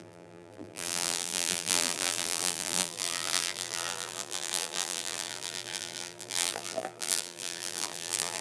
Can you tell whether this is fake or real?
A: fake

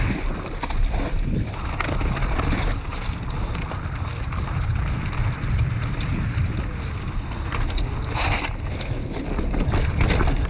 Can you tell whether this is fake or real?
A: real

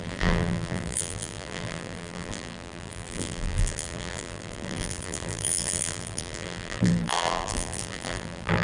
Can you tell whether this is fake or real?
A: fake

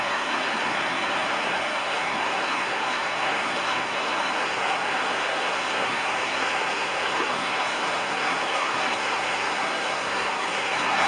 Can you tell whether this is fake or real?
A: fake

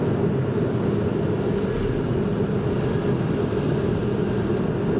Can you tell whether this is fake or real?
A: real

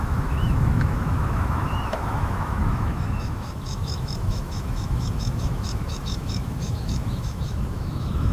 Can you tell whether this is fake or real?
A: fake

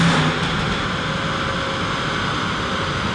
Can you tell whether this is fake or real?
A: real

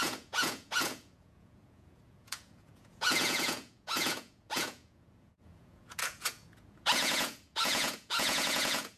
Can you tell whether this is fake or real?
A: fake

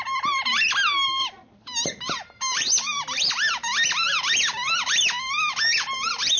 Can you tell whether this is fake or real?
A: real